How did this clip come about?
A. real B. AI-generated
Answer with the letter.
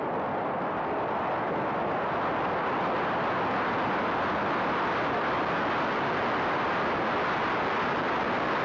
A